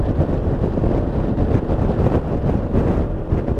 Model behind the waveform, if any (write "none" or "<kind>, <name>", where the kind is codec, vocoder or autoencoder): none